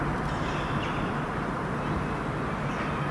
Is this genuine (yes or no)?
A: yes